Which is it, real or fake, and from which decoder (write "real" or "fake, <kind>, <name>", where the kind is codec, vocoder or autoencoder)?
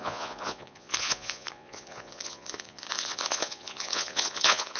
fake, vocoder, Vocos